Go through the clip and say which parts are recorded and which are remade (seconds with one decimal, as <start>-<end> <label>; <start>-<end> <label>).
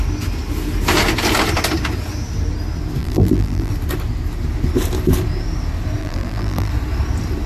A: 0.0-3.0 recorded; 3.0-3.7 remade; 3.7-6.0 recorded; 6.0-6.7 remade; 6.7-7.5 recorded